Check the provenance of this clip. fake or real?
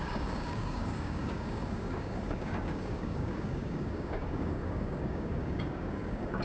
fake